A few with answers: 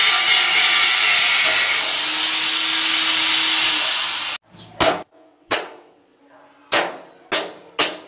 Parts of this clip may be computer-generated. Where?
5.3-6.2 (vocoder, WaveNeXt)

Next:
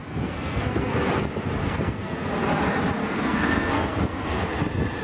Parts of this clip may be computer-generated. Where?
0.0-1.2 (codec, SNAC); 1.6-2.3; 3.0-4.5

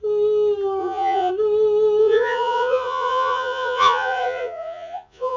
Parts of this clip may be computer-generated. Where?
0.8-1.3 (vocoder, Vocos); 2.0-5.4

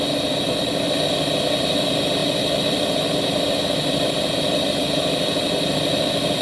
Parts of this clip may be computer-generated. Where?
none

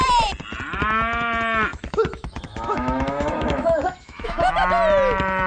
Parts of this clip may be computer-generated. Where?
1.7-4.5 (autoencoder, DAC-VAE)